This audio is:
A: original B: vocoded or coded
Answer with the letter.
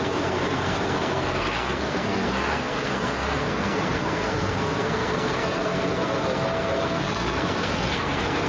B